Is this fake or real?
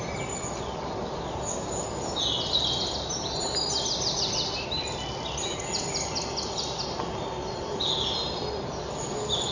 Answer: real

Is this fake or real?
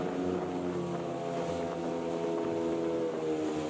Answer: real